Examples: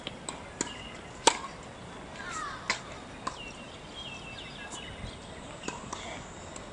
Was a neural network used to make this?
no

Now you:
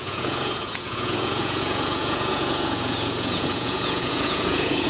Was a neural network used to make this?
yes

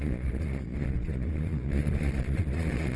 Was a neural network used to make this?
yes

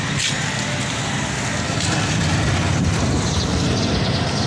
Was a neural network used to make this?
no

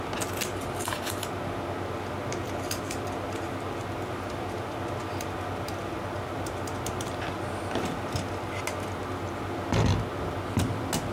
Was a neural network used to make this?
no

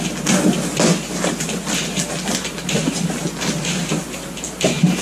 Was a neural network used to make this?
no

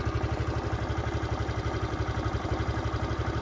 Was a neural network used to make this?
no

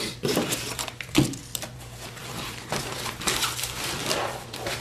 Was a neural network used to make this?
yes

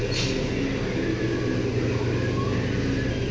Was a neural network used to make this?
no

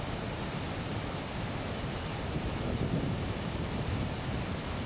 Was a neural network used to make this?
no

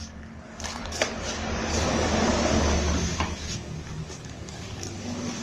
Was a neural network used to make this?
yes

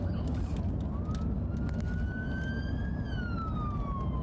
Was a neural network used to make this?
no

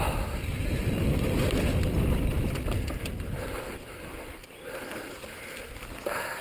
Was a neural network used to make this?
yes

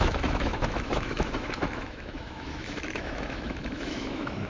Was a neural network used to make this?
yes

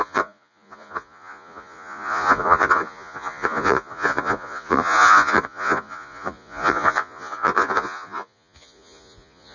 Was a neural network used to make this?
yes